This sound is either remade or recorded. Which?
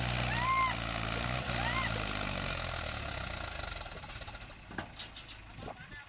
recorded